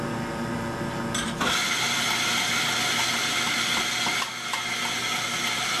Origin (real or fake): real